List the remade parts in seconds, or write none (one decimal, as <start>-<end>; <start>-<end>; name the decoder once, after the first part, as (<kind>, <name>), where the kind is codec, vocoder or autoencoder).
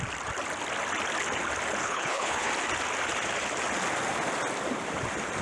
1.8-2.5 (codec, HILCodec)